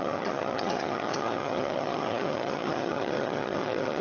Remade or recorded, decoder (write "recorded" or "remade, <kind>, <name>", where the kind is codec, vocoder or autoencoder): remade, vocoder, HiFi-GAN